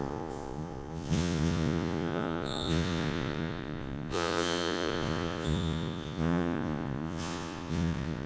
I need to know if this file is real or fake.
fake